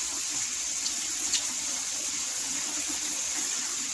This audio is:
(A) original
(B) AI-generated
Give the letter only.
B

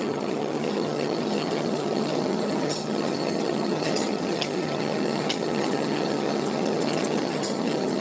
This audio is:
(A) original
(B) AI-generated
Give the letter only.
B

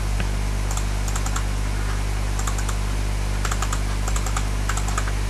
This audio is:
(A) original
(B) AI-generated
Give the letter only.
A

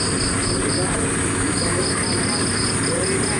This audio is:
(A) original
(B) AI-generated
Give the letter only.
A